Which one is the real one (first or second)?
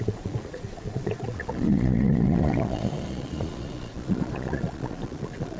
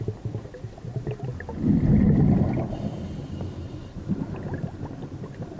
second